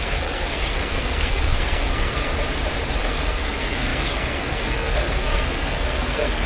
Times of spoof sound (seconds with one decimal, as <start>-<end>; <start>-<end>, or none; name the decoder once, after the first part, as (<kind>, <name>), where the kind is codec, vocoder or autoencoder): 0.0-2.3 (codec, SNAC); 3.0-6.5